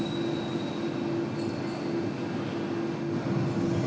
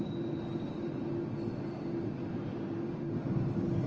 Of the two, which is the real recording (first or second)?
first